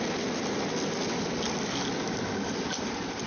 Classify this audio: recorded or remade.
recorded